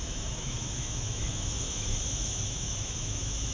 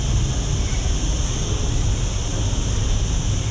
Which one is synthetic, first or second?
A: first